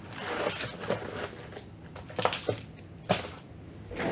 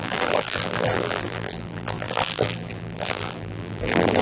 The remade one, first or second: second